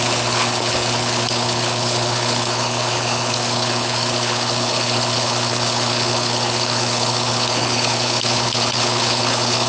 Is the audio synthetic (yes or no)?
yes